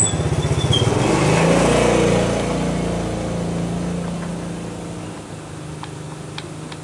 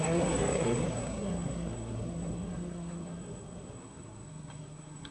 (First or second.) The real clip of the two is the first